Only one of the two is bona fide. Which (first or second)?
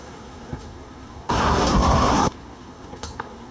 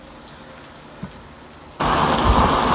second